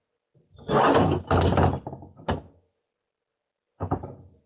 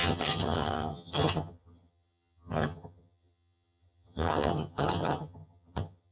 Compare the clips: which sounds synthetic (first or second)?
second